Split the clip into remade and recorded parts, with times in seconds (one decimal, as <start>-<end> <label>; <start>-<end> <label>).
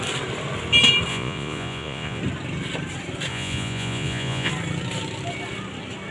0.0-1.1 recorded; 1.1-2.2 remade; 2.2-3.3 recorded; 3.3-4.5 remade; 4.5-6.1 recorded